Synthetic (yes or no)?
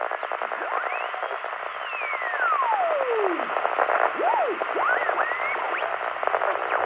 no